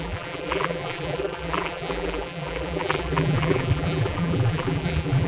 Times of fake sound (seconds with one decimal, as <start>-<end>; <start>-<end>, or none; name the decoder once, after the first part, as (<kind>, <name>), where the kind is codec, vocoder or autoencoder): 0.0-5.3 (vocoder, BigVGAN v2)